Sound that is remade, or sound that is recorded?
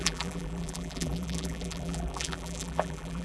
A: remade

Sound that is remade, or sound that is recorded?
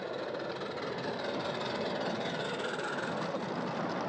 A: recorded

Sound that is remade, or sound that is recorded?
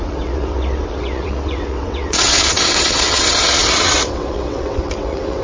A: remade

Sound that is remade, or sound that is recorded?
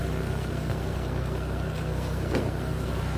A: remade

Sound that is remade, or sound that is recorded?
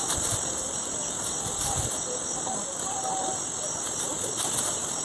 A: recorded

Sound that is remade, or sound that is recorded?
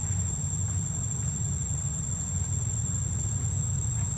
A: recorded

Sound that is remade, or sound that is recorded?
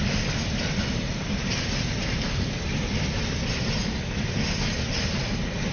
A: recorded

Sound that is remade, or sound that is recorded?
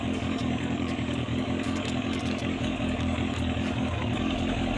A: remade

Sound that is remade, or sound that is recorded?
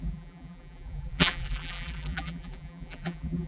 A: remade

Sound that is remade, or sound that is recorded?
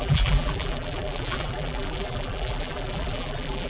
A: remade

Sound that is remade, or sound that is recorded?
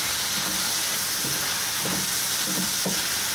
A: recorded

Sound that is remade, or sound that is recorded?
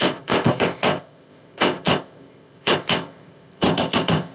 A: remade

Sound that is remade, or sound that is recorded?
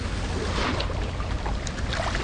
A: recorded